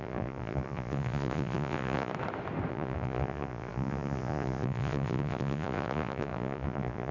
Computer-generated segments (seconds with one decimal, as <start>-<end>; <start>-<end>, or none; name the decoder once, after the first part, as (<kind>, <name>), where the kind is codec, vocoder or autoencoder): 0.0-2.1 (vocoder, Vocos); 2.7-7.1